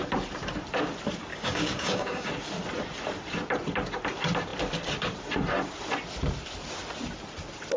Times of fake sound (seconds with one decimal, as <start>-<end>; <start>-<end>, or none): 1.3-2.3